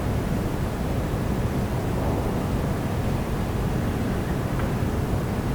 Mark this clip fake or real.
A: real